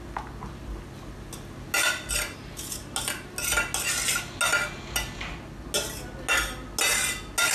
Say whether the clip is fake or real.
real